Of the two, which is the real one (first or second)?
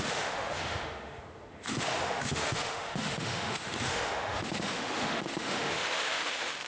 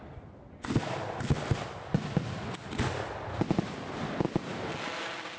second